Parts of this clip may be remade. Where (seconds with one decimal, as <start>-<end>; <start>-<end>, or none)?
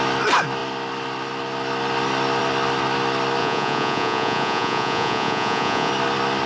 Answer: 3.4-5.9